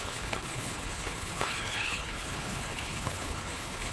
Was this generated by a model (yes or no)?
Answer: yes